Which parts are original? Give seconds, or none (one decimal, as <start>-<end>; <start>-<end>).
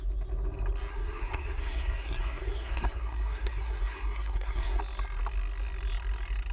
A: 0.0-0.9; 4.8-6.5